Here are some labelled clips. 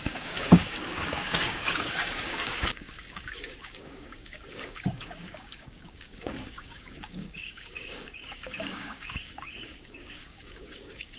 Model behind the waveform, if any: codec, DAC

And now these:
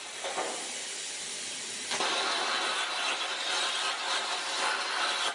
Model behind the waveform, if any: none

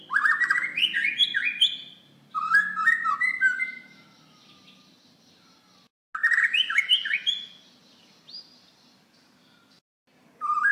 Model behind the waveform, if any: none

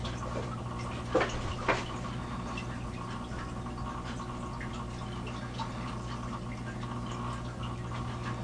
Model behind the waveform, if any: none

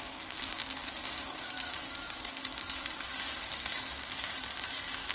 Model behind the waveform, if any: codec, DAC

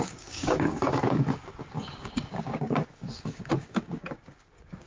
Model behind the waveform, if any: codec, DAC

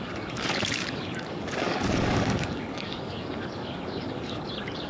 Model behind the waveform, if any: codec, DAC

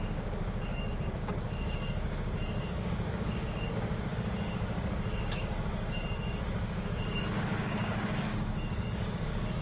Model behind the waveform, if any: codec, DAC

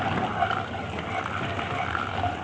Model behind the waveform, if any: none